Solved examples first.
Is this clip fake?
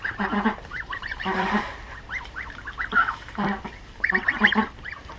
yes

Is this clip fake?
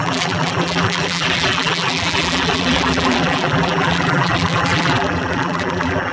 yes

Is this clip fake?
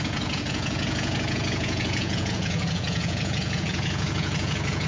yes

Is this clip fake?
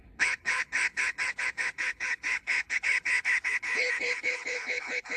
yes